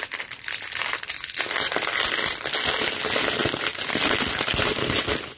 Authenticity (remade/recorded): recorded